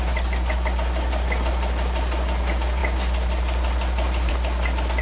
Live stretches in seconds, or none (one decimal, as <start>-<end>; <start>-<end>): 0.0-5.0